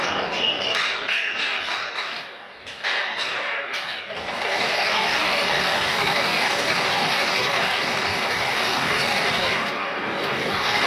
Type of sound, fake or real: fake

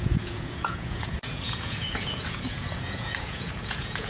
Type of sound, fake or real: fake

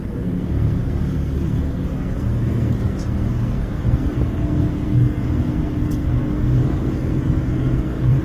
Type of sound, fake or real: fake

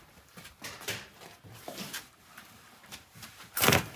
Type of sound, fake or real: fake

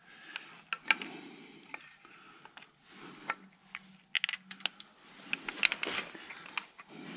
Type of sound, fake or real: real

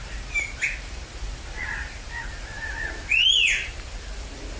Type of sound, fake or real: real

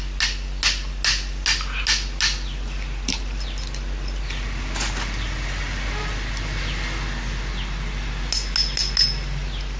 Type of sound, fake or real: real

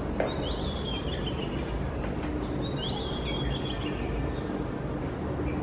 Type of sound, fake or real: real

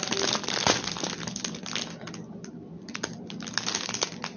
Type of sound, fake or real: real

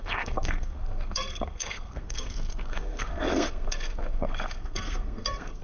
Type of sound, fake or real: fake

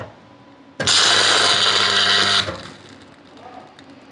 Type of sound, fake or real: real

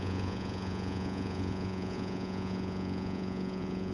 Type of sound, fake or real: fake